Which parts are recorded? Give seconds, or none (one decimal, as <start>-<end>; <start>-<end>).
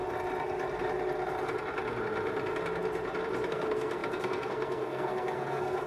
0.0-3.5